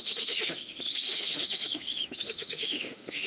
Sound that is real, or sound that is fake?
fake